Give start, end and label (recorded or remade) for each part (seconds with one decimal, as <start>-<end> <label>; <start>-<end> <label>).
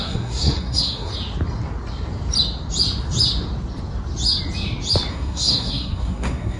0.0-1.1 remade; 1.1-5.1 recorded; 5.1-6.6 remade